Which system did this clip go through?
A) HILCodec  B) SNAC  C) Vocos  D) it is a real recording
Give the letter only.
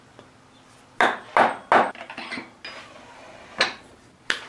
D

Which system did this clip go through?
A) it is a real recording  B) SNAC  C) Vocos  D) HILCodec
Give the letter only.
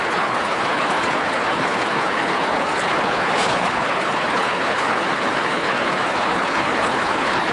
D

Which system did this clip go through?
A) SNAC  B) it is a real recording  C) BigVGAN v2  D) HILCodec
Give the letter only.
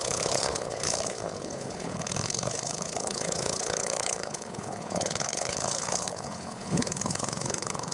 D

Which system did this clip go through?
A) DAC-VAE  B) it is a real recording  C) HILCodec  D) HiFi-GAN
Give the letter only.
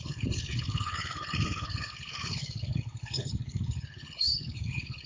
C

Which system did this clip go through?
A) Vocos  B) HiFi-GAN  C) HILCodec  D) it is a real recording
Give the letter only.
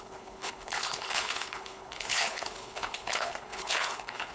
C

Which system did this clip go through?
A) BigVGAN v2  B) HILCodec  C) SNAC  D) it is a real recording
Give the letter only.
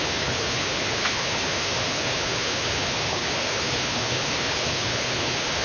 B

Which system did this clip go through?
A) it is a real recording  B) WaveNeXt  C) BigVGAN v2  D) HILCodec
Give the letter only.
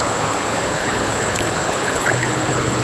D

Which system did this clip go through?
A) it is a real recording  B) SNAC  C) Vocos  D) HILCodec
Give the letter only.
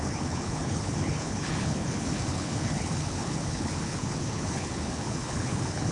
D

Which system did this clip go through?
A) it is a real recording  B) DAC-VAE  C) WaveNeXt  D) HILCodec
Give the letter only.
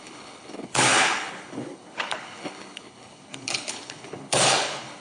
D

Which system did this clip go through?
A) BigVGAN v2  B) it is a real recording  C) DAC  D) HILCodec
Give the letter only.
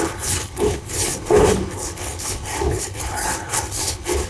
D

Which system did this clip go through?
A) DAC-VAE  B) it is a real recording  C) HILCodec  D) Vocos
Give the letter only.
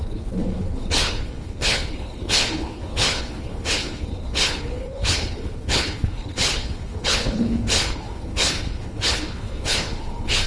C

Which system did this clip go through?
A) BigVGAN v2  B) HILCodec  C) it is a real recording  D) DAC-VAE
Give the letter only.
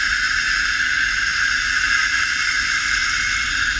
C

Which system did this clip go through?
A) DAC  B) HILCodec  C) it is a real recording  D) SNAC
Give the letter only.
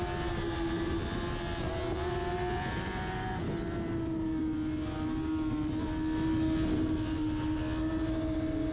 C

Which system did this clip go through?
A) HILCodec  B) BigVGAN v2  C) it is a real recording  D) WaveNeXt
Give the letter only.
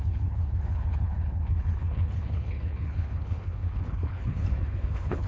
A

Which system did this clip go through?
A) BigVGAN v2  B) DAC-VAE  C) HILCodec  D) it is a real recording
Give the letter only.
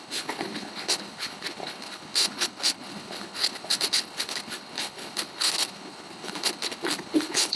C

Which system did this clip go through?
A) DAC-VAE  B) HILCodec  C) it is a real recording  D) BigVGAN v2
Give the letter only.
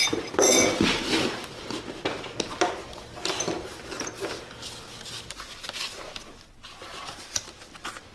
C